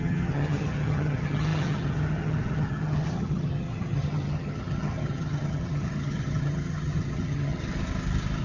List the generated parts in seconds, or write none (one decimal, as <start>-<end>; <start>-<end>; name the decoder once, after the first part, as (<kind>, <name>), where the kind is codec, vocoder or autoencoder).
0.0-7.6 (vocoder, HiFi-GAN)